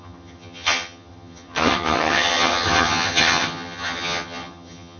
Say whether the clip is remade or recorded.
remade